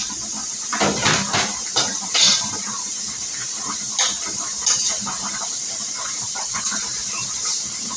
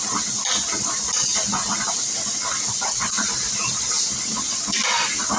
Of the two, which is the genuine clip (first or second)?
second